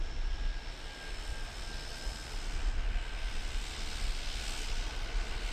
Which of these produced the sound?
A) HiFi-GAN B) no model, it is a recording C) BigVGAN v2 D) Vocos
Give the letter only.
B